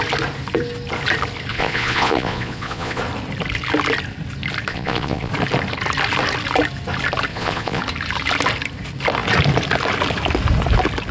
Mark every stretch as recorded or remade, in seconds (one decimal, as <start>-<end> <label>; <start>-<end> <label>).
0.0-1.5 recorded; 1.5-3.0 remade; 3.0-4.7 recorded; 4.7-5.3 remade; 5.3-7.3 recorded; 7.3-7.8 remade; 7.8-11.1 recorded